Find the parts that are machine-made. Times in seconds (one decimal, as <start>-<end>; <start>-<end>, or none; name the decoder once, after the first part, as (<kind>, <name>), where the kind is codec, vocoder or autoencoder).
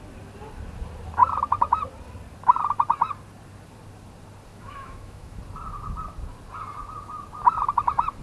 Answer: 4.5-5.4 (autoencoder, DAC-VAE)